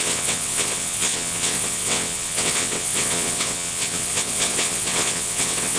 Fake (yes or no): yes